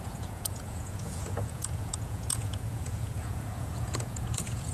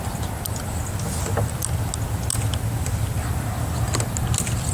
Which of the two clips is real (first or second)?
second